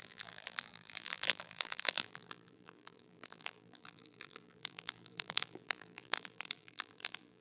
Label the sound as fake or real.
fake